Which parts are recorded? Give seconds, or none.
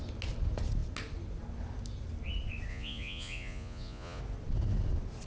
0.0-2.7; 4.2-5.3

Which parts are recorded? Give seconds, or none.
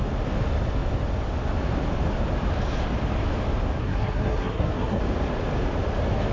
0.0-3.8; 5.0-6.3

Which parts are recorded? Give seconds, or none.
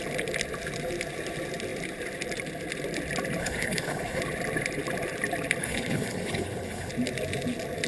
0.0-3.4; 4.2-5.6; 6.9-7.9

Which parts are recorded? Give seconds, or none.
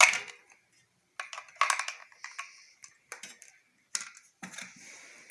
0.0-5.3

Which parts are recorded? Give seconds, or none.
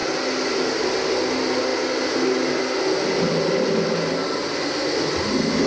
0.0-5.7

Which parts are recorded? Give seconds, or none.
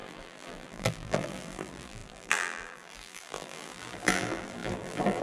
none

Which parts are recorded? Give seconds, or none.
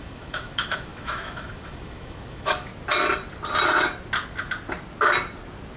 2.7-5.8